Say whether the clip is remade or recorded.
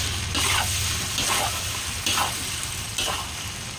recorded